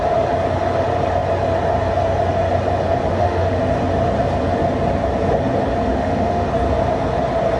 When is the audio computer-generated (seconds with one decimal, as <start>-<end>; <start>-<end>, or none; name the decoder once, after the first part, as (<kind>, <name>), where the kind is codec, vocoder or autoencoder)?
3.1-3.6 (autoencoder, DAC-VAE); 5.9-6.5